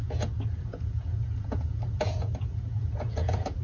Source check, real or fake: fake